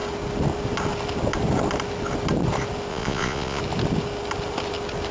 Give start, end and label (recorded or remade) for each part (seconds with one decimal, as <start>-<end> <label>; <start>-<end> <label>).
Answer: 0.0-2.9 recorded; 2.9-3.6 remade; 3.6-5.1 recorded